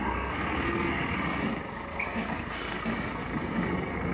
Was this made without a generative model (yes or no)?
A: no